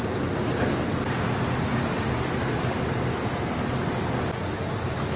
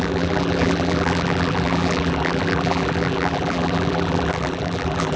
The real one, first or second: first